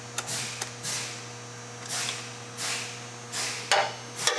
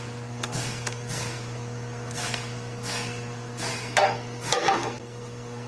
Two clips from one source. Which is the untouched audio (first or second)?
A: first